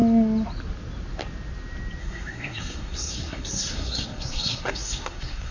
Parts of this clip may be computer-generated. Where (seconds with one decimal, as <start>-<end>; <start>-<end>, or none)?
2.0-5.5